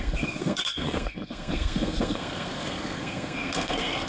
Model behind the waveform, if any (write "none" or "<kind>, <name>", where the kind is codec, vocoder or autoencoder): codec, SNAC